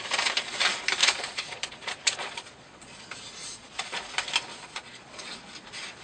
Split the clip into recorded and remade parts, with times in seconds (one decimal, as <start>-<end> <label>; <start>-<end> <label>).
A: 0.0-1.0 recorded; 1.0-3.0 remade; 3.0-3.4 recorded; 3.4-4.0 remade; 4.0-4.5 recorded; 4.5-5.4 remade; 5.4-6.0 recorded